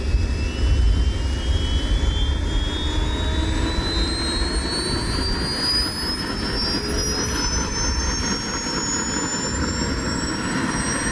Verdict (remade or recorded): recorded